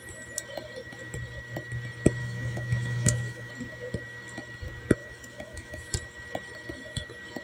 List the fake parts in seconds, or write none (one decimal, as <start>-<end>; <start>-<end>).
2.2-3.5; 5.0-5.9